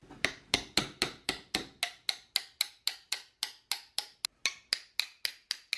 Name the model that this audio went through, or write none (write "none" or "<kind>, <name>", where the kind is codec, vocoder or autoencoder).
none